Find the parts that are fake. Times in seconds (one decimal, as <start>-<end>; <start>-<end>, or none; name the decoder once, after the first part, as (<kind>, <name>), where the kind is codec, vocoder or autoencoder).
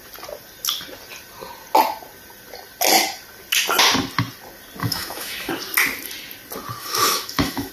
4.8-5.5 (autoencoder, DAC-VAE); 6.8-7.7